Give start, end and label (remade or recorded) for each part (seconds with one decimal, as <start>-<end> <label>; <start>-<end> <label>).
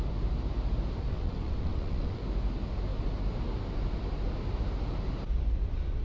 0.0-1.1 recorded; 1.1-2.2 remade; 2.2-6.0 recorded